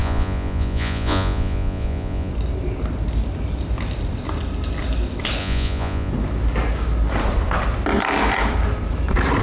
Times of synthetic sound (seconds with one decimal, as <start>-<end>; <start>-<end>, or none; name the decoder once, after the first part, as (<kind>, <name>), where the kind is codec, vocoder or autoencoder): 0.0-2.3 (vocoder, Vocos); 5.4-6.1